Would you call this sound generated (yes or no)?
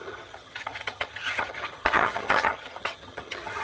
yes